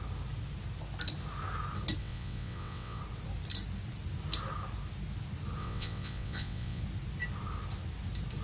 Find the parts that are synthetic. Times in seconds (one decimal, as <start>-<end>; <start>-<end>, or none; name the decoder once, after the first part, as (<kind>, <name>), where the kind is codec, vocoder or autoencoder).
2.0-3.0 (vocoder, WaveNeXt); 5.6-6.8